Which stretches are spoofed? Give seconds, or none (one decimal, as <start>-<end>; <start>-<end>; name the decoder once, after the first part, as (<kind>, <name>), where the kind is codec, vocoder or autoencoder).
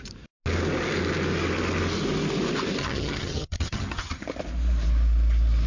2.8-4.2 (vocoder, HiFi-GAN)